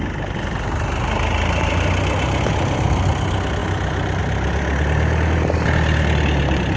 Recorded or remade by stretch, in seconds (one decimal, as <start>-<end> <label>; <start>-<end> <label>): 0.0-6.8 recorded